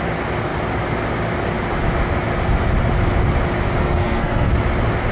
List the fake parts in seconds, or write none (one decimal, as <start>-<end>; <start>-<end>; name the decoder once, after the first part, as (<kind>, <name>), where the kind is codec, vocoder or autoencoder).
3.8-4.5 (codec, SNAC)